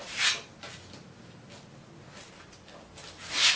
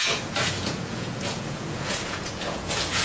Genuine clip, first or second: first